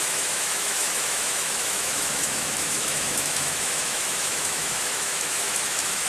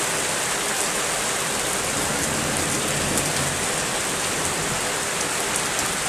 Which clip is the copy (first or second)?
first